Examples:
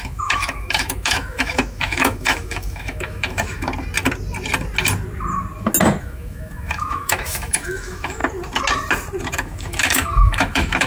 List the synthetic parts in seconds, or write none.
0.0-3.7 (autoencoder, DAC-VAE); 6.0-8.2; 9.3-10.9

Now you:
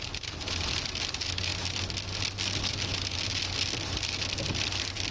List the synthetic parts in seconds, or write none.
none

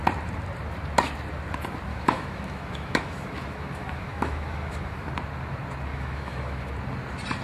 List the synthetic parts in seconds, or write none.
1.9-5.1 (autoencoder, DAC-VAE); 5.9-6.7

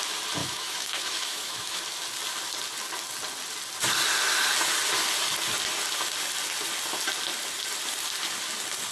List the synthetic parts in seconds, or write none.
0.4-1.8 (autoencoder, DAC-VAE)

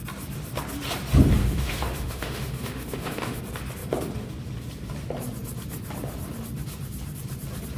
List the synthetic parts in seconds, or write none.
1.4-3.4 (autoencoder, DAC-VAE)

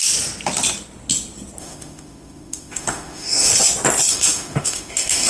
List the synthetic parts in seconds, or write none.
1.6-3.5 (autoencoder, DAC-VAE); 4.1-5.3

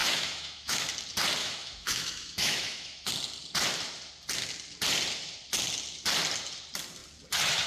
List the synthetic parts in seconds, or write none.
0.0-0.9 (autoencoder, DAC-VAE); 1.4-3.1

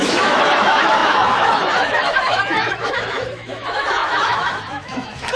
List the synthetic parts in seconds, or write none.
0.0-5.4 (autoencoder, DAC-VAE)